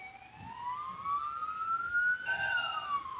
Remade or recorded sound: recorded